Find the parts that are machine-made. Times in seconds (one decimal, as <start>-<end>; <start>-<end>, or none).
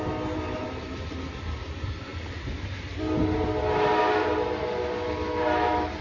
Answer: none